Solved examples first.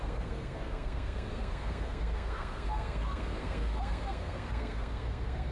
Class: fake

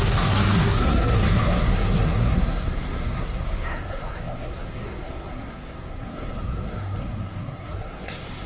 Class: fake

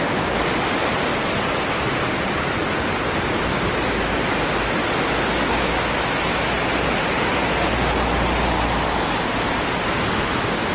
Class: real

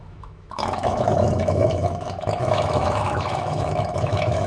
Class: fake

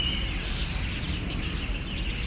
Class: real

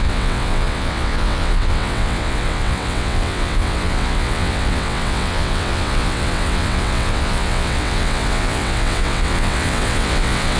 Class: fake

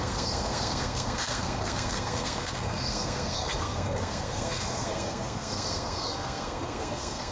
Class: fake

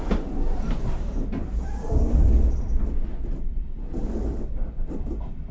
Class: real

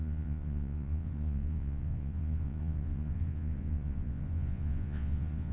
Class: fake